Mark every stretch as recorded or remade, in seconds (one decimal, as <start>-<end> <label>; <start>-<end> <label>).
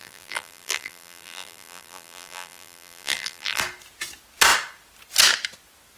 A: 0.0-3.6 remade; 3.6-6.0 recorded